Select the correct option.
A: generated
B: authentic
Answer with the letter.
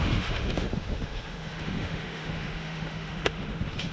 A